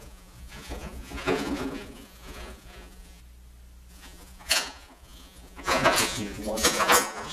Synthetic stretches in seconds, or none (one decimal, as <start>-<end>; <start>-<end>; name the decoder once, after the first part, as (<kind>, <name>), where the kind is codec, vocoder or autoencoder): 0.0-3.2 (vocoder, Vocos); 3.9-7.3